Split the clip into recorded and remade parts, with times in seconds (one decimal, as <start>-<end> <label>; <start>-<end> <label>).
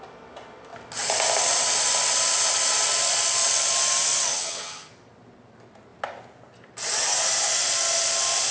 0.0-4.3 recorded; 4.3-4.9 remade; 4.9-8.5 recorded